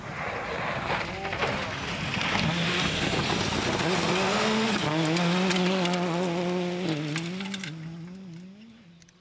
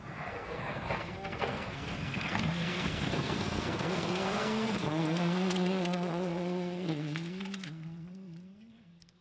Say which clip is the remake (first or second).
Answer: second